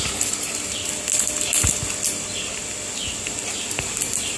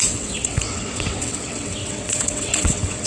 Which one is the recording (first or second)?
first